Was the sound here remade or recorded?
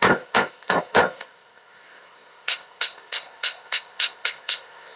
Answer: remade